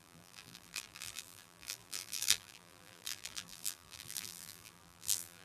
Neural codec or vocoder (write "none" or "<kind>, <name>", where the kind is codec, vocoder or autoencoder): vocoder, BigVGAN v2